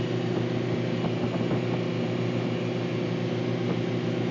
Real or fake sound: real